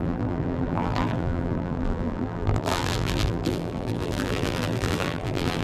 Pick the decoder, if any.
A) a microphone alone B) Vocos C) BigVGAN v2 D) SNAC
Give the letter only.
C